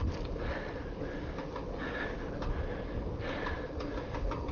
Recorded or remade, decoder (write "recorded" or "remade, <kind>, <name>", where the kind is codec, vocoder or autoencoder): recorded